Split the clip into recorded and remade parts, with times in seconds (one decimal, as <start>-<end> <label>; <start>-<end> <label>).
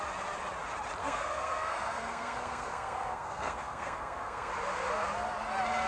0.0-1.0 recorded; 1.0-4.5 remade; 4.5-5.9 recorded